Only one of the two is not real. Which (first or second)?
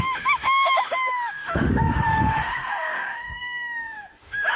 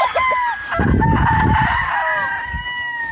first